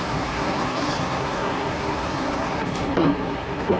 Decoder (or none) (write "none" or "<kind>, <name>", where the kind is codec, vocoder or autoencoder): codec, SNAC